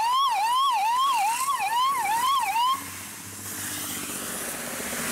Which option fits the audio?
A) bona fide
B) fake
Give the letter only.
A